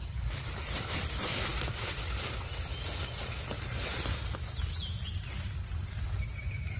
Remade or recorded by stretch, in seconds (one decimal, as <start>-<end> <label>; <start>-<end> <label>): 0.0-6.8 recorded